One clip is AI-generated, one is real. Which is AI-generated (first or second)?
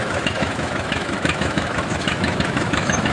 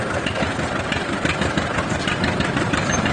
first